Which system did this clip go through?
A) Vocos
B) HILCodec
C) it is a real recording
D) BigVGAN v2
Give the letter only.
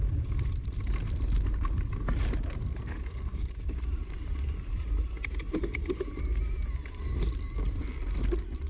D